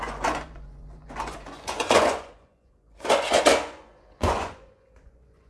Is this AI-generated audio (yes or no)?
yes